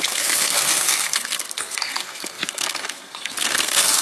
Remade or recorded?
remade